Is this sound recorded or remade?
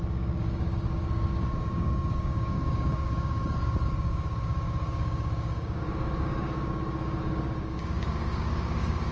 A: remade